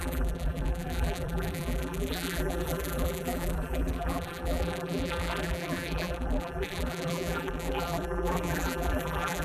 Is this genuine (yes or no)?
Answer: no